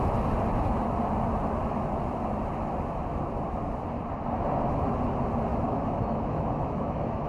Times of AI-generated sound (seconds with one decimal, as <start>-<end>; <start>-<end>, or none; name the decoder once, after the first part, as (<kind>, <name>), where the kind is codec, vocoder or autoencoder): 5.5-7.3 (autoencoder, DAC-VAE)